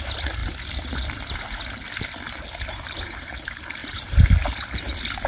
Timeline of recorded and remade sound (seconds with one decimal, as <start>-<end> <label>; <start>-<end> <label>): 0.0-2.7 recorded; 2.7-3.3 remade; 3.3-3.8 recorded; 3.8-4.7 remade; 4.7-5.3 recorded